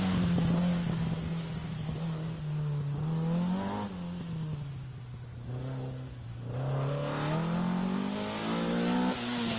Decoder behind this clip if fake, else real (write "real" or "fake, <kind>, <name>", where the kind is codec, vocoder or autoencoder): real